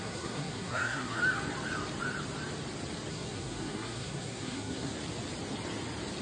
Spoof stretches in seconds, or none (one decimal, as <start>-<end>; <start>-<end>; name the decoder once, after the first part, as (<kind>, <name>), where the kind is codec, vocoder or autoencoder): 0.0-1.2 (codec, SNAC); 3.1-4.9